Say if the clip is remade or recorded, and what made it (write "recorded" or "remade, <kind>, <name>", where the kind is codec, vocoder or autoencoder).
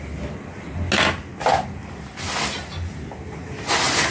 recorded